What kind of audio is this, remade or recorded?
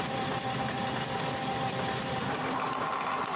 recorded